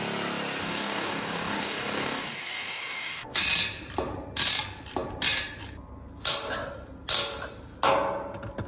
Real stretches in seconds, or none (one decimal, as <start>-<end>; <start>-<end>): 0.0-0.6; 3.4-8.7